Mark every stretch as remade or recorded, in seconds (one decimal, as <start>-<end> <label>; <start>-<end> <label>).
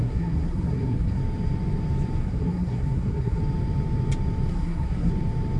0.0-1.2 remade; 1.2-2.2 recorded; 2.2-3.4 remade; 3.4-4.5 recorded; 4.5-5.1 remade; 5.1-5.6 recorded